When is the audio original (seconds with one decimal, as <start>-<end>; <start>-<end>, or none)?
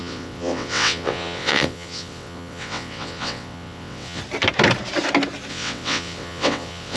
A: 4.2-5.5